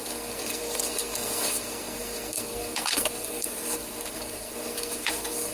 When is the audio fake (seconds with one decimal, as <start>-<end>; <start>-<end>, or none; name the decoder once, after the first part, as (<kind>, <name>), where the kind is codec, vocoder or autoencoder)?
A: 0.0-5.5 (codec, SNAC)